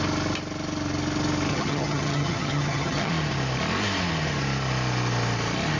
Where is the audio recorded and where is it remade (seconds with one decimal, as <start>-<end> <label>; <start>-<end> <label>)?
0.0-1.5 recorded; 1.5-3.1 remade; 3.1-5.8 recorded